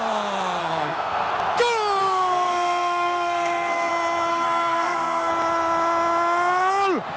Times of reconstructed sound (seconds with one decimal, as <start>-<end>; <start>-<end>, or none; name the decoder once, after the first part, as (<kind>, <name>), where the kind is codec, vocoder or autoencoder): 0.6-1.3 (codec, SNAC); 2.0-3.9; 4.3-5.3